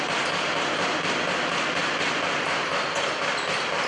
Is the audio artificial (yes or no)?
no